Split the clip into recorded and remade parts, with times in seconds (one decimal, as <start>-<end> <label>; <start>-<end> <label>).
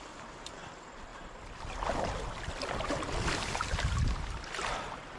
0.0-5.2 recorded